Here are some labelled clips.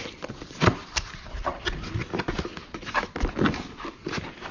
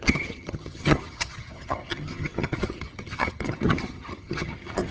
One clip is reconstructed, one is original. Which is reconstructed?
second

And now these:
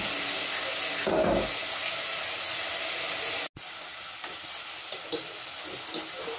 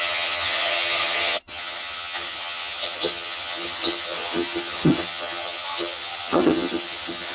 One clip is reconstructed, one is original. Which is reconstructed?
second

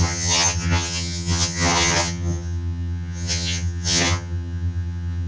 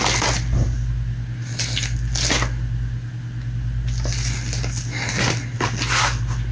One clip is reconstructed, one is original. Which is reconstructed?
first